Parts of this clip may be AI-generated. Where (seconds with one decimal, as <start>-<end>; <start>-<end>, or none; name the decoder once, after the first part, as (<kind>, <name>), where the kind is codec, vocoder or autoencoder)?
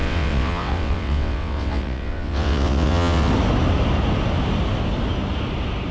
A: 0.0-3.3 (vocoder, WaveNeXt)